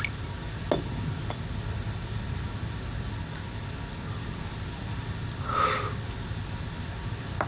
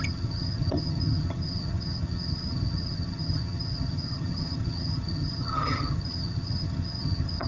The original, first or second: first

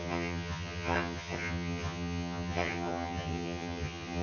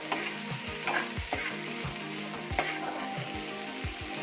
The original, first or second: second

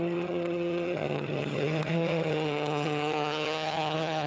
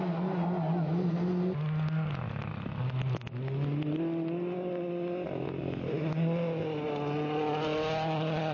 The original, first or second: second